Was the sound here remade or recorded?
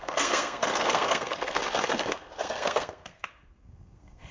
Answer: remade